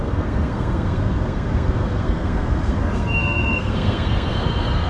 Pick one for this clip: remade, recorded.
remade